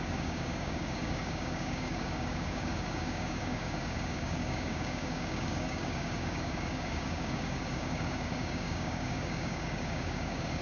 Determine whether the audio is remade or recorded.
remade